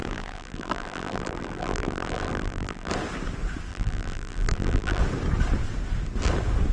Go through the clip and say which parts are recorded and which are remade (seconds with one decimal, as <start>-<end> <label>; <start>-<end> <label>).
0.0-2.9 remade; 2.9-3.7 recorded; 3.7-5.0 remade; 5.0-6.7 recorded